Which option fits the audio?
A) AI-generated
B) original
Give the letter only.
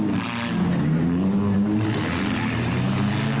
B